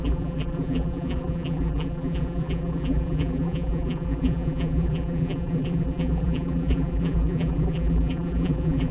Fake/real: fake